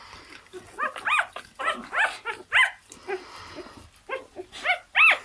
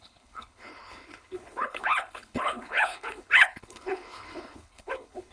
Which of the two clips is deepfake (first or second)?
second